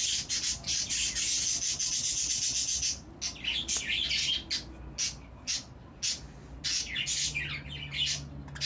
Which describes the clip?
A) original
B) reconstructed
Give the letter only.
A